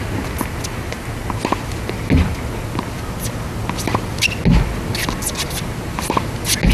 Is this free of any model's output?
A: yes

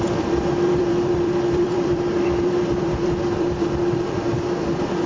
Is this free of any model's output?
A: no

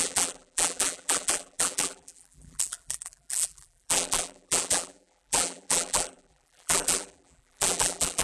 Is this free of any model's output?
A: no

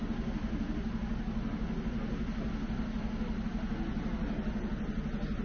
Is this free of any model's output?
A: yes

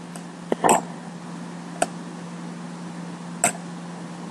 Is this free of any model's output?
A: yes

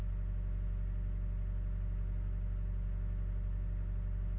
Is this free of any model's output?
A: yes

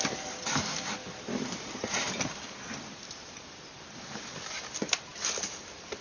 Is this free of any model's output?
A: no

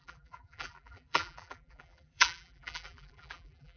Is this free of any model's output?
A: no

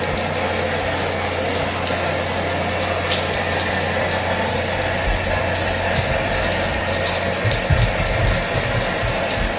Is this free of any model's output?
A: yes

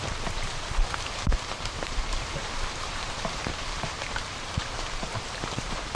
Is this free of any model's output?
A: no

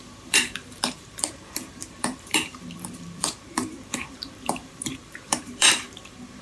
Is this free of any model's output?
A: no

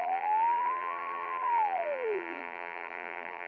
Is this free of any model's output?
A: no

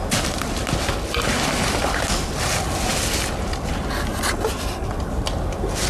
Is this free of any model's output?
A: yes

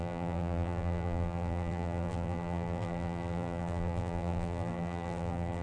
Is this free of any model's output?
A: no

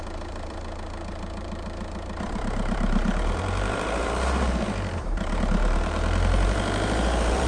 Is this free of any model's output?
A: no